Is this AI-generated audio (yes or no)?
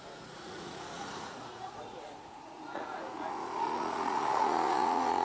yes